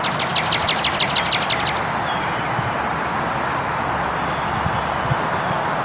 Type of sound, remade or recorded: recorded